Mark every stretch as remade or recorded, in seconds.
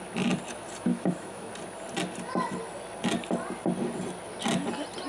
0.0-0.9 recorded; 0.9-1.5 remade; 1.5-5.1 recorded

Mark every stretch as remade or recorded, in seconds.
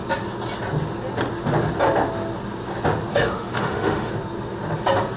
0.0-3.1 recorded; 3.1-4.1 remade; 4.1-5.2 recorded